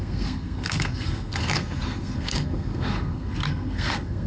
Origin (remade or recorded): remade